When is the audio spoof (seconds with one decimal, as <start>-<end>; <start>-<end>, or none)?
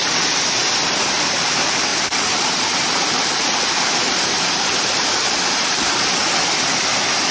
1.4-6.2